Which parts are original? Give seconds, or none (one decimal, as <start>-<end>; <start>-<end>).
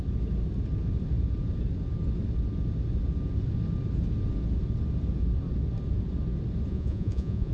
0.0-6.7